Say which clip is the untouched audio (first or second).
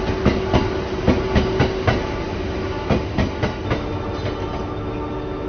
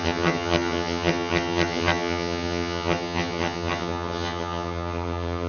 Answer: first